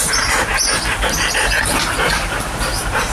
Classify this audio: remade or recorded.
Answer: remade